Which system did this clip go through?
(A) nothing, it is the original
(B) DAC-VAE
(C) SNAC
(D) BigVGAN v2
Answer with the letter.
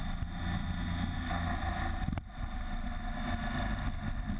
A